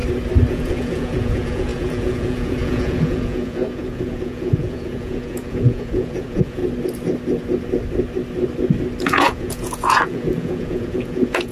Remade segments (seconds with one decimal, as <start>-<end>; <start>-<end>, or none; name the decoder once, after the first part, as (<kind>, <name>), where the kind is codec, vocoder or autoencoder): 0.5-6.6 (vocoder, Vocos); 9.0-11.5